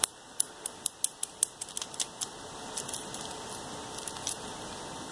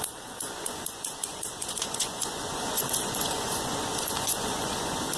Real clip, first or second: first